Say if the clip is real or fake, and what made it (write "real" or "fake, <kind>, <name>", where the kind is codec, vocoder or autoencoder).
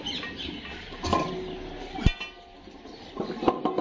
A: real